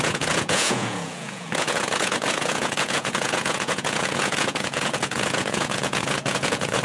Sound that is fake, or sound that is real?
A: fake